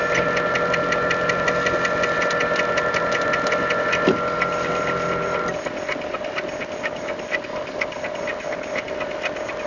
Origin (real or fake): real